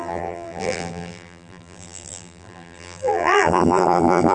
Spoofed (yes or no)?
yes